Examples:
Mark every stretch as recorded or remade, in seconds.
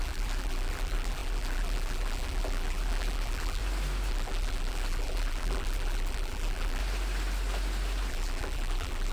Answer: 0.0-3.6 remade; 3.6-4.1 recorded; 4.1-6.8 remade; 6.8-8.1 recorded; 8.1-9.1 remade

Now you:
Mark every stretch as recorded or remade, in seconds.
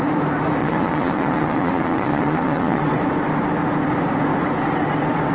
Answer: 0.0-0.6 recorded; 0.6-2.8 remade; 2.8-5.3 recorded